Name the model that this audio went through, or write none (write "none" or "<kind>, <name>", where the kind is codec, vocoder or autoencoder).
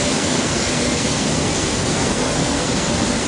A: codec, SNAC